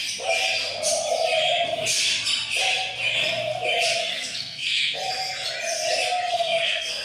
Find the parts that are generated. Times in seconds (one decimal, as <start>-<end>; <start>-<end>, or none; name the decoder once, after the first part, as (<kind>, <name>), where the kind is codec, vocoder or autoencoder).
4.1-5.0 (codec, SNAC); 6.3-7.0